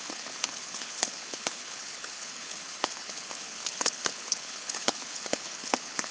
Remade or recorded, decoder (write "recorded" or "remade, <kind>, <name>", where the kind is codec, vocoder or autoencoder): remade, codec, HILCodec